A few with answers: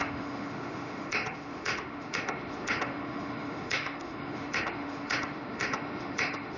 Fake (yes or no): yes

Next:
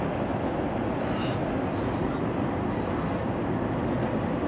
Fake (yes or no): no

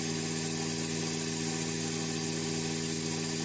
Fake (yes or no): no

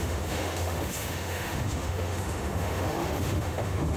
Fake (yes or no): yes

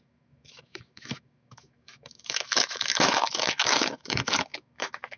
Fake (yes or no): yes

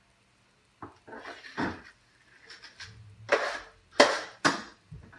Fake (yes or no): no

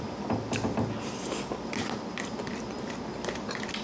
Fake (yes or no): no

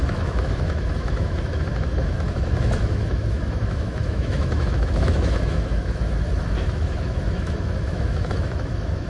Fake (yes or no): yes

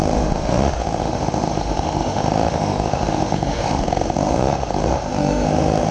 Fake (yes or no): yes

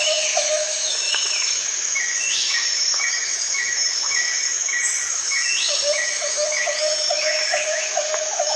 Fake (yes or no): yes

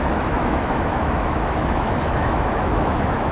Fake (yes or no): yes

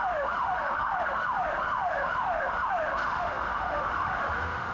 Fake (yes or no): yes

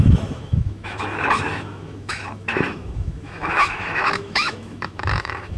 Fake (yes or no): yes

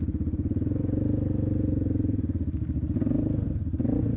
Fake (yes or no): no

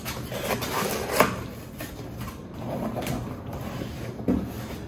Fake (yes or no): no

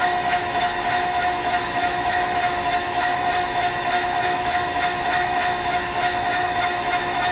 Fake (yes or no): yes